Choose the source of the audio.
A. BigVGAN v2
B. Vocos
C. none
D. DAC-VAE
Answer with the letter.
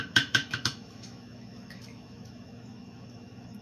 D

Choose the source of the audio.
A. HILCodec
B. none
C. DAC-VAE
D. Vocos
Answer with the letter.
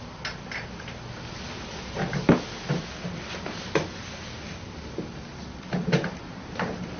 B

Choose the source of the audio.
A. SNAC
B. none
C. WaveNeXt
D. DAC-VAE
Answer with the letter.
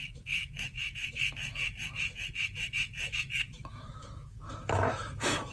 D